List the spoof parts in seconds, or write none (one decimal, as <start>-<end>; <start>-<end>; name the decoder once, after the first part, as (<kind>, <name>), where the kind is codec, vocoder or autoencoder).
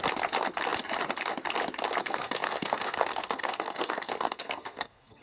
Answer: 2.0-5.2 (codec, SNAC)